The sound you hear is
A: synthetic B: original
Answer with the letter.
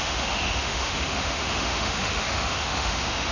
A